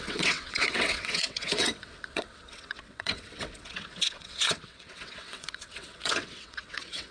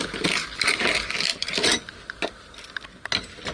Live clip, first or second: second